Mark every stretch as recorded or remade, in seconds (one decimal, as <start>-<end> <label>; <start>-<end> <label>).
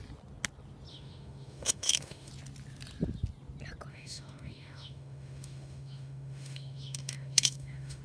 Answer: 0.0-0.9 recorded; 0.9-2.3 remade; 2.3-3.9 recorded; 3.9-8.0 remade